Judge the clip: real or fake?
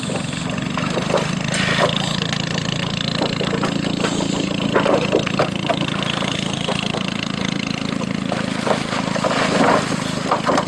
real